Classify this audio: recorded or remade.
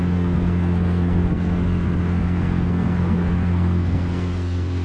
remade